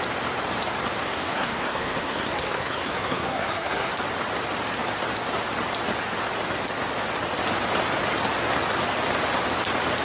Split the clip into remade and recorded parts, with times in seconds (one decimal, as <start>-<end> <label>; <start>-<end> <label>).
0.0-1.1 recorded; 1.1-3.9 remade; 3.9-10.0 recorded